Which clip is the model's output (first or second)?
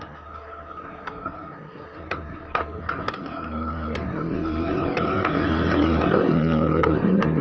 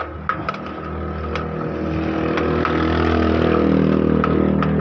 first